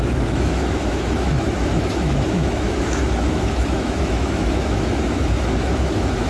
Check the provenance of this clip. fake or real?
fake